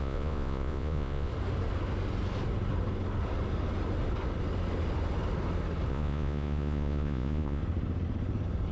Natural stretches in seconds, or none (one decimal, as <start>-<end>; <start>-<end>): 1.3-5.9; 7.6-8.7